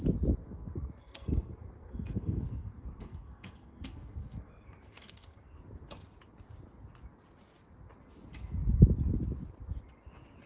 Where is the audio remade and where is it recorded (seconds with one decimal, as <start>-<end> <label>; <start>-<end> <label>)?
0.0-0.4 recorded; 0.4-5.6 remade; 5.6-10.5 recorded